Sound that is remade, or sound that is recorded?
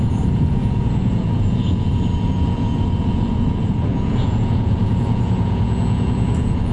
remade